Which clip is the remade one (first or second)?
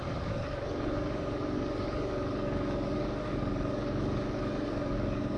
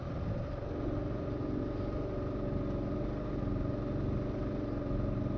first